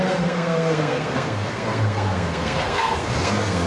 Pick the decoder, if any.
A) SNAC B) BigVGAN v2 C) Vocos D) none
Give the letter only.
A